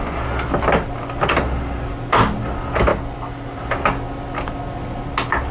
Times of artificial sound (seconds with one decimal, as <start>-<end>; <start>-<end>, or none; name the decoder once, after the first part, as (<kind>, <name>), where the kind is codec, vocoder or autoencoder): 2.9-3.7 (vocoder, BigVGAN v2)